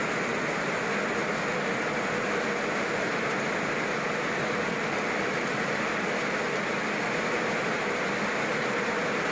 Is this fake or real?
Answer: real